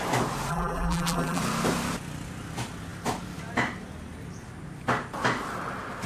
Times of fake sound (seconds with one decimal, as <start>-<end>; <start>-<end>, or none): 0.5-1.4